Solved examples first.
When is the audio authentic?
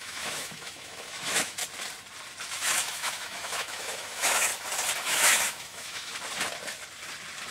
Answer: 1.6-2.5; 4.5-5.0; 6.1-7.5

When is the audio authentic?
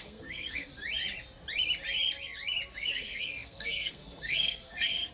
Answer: 0.7-2.7